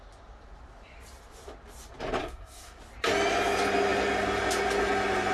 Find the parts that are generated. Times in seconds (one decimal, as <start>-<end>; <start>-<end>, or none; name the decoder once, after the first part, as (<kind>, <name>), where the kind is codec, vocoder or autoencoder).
2.2-2.8 (codec, SNAC)

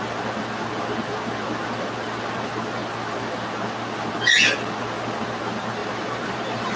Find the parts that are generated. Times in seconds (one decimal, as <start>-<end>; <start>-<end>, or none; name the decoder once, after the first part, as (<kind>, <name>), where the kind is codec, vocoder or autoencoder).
5.8-6.8 (vocoder, BigVGAN v2)

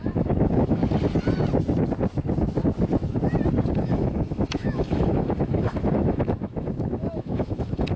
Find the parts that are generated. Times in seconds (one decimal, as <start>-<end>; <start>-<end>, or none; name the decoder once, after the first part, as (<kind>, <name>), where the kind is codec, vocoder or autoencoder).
0.0-0.8 (autoencoder, DAC-VAE); 3.7-8.0

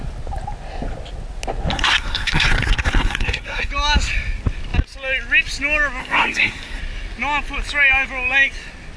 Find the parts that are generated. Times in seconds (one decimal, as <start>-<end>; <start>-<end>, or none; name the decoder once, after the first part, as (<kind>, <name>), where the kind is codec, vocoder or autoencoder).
1.7-3.7 (codec, SNAC); 6.0-6.8

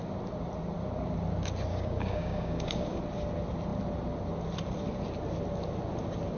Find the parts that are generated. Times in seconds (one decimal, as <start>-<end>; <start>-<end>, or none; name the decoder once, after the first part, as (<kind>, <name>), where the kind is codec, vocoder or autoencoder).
1.7-3.0 (codec, DAC)